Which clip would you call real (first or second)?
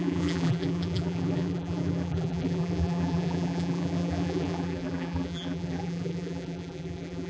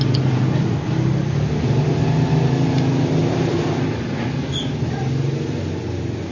second